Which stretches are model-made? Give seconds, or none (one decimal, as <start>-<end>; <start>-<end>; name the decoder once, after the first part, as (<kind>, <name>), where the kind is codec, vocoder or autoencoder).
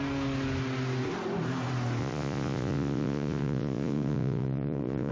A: 2.0-5.1 (vocoder, Vocos)